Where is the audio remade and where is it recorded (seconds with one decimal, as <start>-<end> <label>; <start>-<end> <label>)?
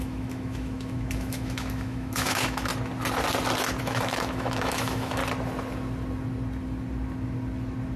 0.0-2.7 remade; 2.7-3.8 recorded; 3.8-5.2 remade; 5.2-8.0 recorded